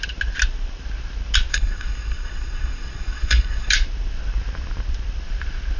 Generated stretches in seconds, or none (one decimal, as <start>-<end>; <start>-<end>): 1.5-3.7